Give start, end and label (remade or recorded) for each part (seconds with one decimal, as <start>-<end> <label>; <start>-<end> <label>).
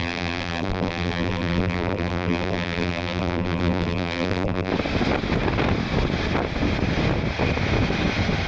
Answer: 0.0-4.7 remade; 4.7-8.5 recorded